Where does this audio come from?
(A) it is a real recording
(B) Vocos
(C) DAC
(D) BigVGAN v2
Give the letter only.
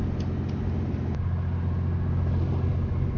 A